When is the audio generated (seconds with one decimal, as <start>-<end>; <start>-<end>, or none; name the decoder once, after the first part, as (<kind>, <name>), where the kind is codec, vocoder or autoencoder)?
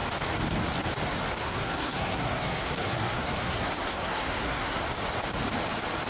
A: 1.4-4.8 (codec, SNAC)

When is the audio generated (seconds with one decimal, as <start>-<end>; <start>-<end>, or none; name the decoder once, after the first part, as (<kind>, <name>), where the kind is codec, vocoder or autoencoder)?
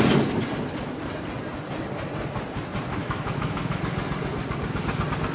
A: 3.0-3.8 (autoencoder, DAC-VAE)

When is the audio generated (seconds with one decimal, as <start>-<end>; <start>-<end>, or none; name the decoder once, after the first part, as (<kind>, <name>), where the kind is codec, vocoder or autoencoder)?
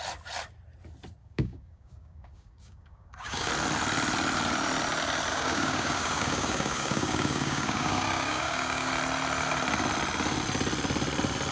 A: 1.2-3.5 (codec, DAC); 5.3-8.9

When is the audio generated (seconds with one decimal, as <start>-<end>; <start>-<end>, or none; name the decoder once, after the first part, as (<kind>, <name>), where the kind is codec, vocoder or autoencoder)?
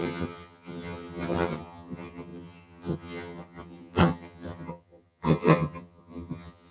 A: 0.0-6.7 (vocoder, HiFi-GAN)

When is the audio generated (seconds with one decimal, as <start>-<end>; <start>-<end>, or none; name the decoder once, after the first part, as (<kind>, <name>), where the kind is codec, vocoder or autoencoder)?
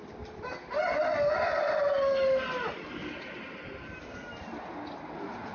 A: none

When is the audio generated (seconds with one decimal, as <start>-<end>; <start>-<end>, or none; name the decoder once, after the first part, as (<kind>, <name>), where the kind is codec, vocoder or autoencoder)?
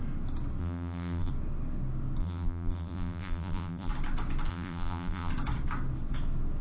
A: 0.6-1.3 (vocoder, BigVGAN v2); 2.2-3.9; 4.5-5.3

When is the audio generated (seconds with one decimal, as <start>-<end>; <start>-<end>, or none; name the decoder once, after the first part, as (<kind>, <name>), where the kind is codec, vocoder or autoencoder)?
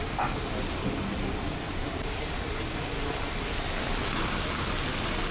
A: none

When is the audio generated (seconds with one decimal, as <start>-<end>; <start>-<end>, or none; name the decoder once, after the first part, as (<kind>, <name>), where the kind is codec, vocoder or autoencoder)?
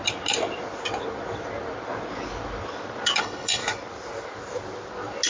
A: 3.2-3.6 (codec, HILCodec)